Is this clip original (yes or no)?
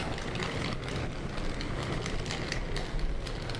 yes